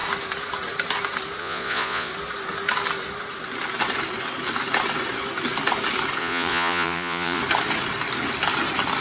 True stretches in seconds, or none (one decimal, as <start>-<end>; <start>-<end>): 0.0-1.4; 2.1-6.2; 7.4-9.0